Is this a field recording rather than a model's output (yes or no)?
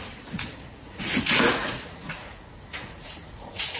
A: no